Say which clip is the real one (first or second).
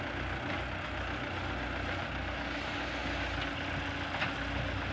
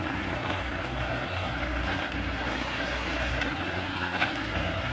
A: first